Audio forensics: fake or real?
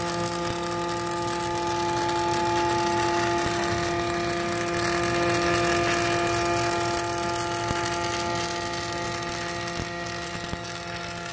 real